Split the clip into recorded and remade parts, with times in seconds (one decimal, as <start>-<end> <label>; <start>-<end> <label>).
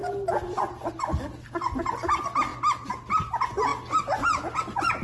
0.0-5.0 recorded